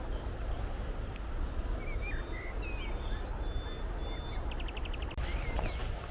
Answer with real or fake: real